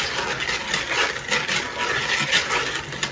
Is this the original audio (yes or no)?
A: yes